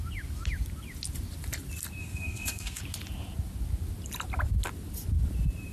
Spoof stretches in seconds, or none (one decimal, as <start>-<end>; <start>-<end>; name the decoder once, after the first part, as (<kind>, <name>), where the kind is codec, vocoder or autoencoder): 2.0-2.8 (codec, SNAC)